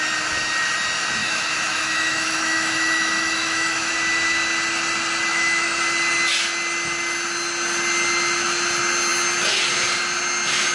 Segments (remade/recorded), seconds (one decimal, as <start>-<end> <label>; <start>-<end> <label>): 0.0-1.2 recorded; 1.2-3.9 remade; 3.9-5.3 recorded; 5.3-5.8 remade; 5.8-10.7 recorded